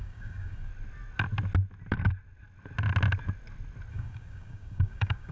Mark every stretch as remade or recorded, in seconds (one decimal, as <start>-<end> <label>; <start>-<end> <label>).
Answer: 0.0-0.7 remade; 0.7-3.9 recorded; 3.9-5.3 remade